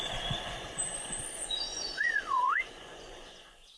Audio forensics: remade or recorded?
remade